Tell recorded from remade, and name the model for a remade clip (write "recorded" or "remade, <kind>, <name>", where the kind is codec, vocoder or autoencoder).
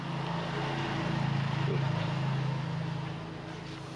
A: recorded